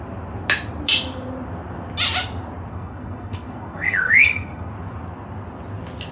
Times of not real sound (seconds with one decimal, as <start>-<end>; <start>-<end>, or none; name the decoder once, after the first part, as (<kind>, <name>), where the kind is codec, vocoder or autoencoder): 2.7-4.7 (codec, SNAC)